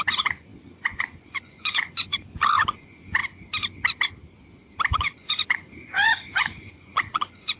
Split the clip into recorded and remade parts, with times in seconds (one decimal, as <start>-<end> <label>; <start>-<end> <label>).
0.0-3.2 remade; 3.2-4.9 recorded; 4.9-7.6 remade